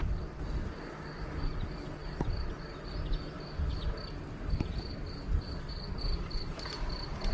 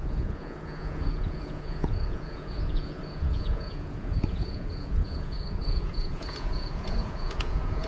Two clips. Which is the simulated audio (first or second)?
second